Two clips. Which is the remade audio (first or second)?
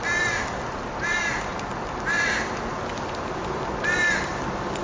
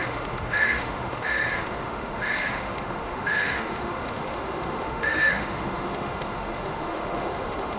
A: second